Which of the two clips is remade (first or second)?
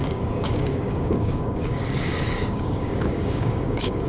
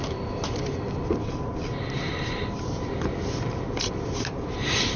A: first